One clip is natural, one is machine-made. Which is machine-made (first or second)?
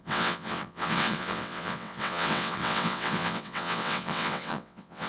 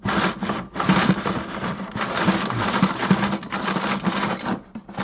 first